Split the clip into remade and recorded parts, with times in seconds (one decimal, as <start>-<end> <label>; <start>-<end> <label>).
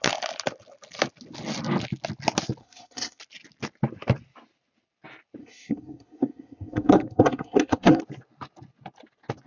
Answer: 0.0-2.6 recorded; 2.6-3.2 remade; 3.2-5.4 recorded; 5.4-8.0 remade; 8.0-9.5 recorded